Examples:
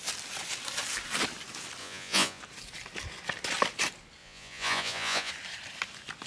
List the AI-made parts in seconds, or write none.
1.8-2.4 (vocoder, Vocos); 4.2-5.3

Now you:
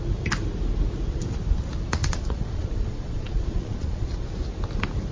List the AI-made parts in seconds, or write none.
2.0-4.3 (vocoder, Vocos)

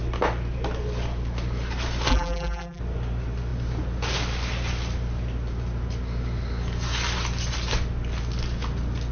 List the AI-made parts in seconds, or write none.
2.1-2.8 (vocoder, BigVGAN v2)

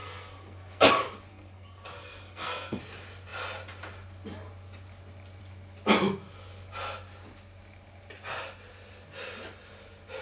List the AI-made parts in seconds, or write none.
0.0-0.9 (codec, SNAC); 1.3-2.8

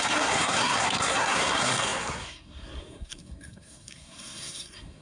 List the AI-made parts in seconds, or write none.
0.0-5.0 (codec, SNAC)